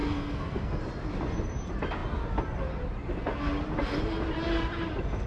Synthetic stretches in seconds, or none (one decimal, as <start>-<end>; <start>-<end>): 0.0-0.8

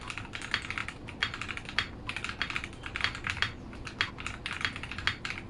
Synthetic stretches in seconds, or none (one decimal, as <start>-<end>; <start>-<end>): none